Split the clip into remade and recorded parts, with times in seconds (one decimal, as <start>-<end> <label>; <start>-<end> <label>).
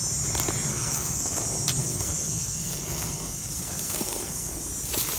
0.0-0.7 recorded; 0.7-1.4 remade; 1.4-1.8 recorded; 1.8-4.6 remade; 4.6-5.2 recorded